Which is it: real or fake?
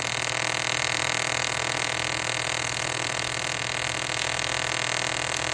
real